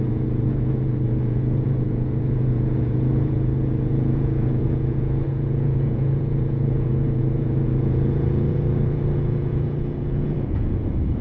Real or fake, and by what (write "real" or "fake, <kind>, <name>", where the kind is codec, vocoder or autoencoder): fake, vocoder, Vocos